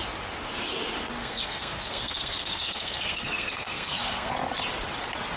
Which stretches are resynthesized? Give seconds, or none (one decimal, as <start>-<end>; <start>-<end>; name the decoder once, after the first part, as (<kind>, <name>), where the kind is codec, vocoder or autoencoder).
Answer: 1.2-4.3 (codec, SNAC)